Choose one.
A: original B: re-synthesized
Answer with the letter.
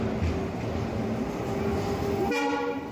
A